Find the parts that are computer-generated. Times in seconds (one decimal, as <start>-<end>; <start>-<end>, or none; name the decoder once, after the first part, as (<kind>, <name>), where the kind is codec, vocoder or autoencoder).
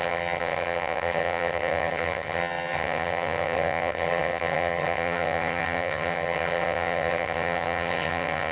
0.0-8.5 (vocoder, HiFi-GAN)